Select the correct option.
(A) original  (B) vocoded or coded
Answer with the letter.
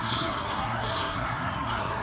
B